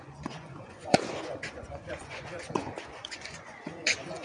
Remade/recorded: remade